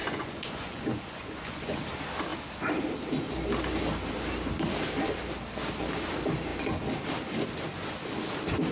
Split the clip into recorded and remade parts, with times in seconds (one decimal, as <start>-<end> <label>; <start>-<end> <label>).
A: 0.0-1.8 remade; 1.8-8.7 recorded